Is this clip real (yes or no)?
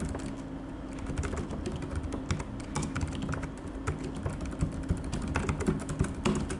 yes